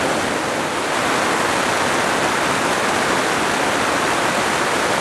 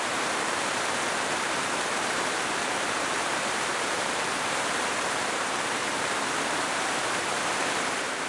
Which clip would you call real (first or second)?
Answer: first